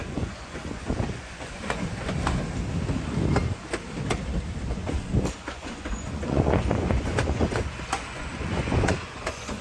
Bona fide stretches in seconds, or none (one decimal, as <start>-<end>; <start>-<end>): 2.4-4.7